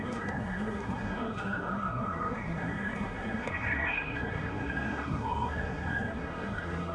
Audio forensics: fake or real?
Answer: fake